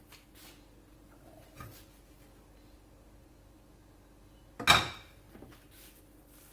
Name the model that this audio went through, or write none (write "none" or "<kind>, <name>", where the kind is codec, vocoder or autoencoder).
none